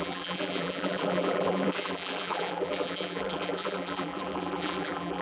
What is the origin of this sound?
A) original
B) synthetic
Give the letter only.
B